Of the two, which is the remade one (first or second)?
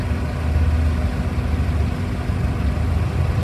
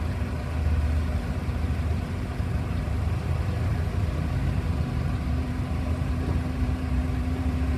second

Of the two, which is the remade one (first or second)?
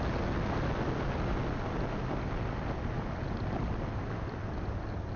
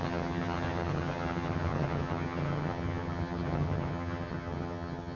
second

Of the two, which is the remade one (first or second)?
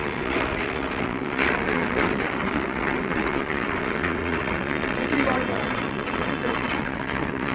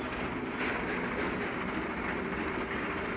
first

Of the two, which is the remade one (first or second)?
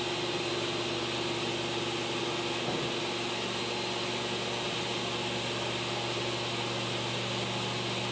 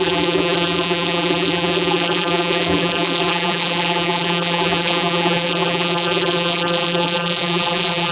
second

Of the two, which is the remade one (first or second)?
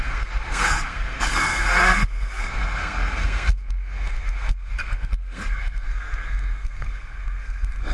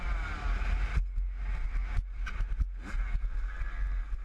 first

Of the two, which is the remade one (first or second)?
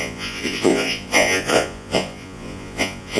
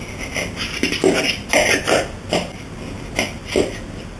first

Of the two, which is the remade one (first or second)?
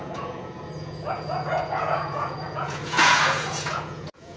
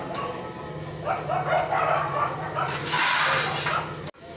first